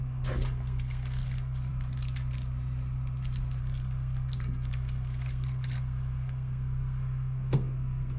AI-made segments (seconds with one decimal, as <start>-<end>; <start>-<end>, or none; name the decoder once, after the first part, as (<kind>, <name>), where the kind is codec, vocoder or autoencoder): 0.0-1.7 (codec, SNAC); 3.6-8.2